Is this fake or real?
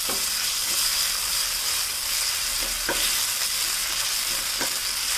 real